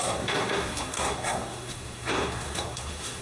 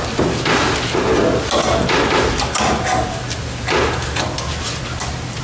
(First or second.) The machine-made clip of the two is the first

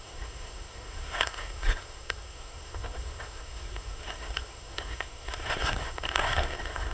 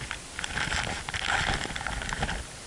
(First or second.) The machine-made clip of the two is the first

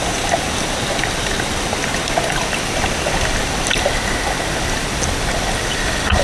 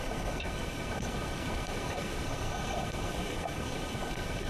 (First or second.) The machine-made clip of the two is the second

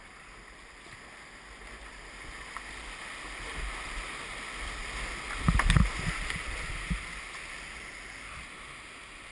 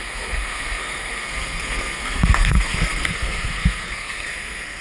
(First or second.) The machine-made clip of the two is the second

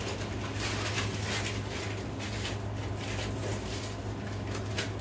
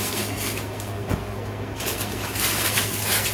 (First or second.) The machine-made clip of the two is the second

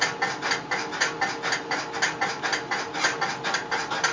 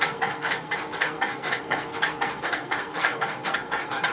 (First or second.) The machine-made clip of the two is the second